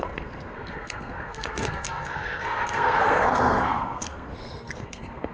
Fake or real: fake